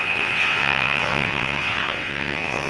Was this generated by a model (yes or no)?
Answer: yes